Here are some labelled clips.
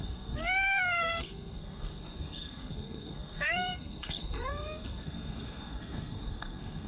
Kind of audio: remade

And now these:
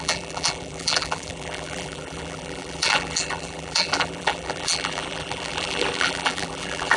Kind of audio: remade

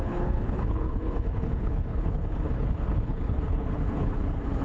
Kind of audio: remade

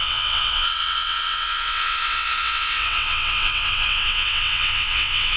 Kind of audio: remade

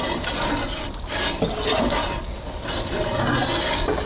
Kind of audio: recorded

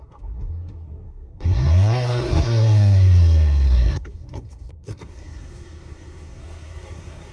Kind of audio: remade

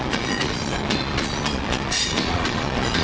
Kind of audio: remade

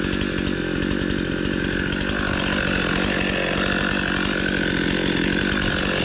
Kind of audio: recorded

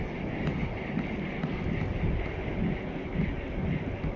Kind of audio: recorded